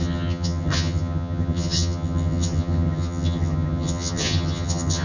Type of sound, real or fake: fake